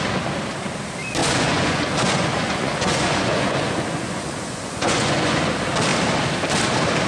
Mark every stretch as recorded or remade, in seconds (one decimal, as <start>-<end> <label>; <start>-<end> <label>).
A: 0.0-1.2 recorded; 1.2-5.5 remade; 5.5-7.1 recorded